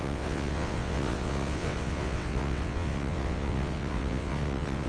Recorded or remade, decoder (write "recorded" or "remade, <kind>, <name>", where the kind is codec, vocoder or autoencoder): remade, vocoder, WaveNeXt